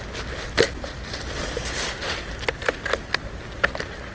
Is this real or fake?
real